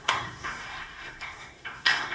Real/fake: fake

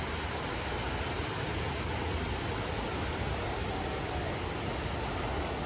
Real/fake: real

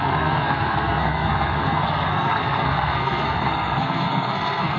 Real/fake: fake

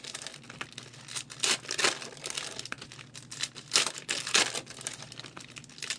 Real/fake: real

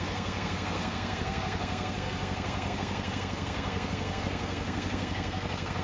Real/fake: fake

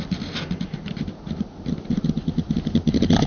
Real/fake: real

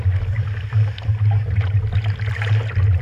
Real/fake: real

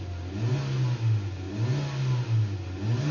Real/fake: real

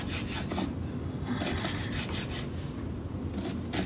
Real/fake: real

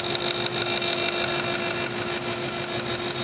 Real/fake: real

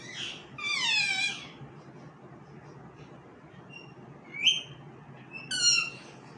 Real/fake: real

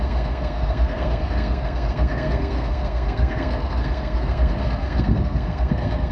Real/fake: fake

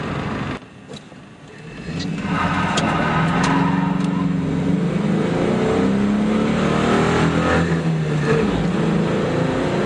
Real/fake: real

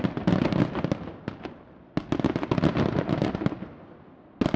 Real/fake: real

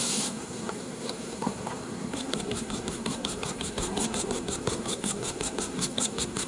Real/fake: fake